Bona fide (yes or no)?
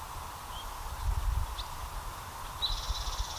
yes